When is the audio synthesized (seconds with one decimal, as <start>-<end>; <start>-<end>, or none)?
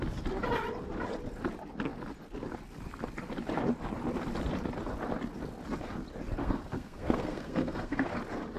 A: 6.4-8.1